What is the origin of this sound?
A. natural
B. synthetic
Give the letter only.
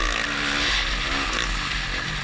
A